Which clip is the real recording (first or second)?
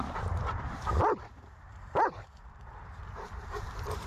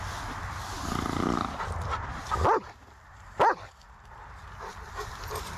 second